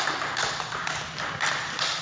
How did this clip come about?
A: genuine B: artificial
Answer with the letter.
A